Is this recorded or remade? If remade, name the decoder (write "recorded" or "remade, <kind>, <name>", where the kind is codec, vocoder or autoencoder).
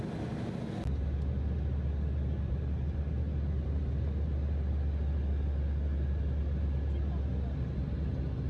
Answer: recorded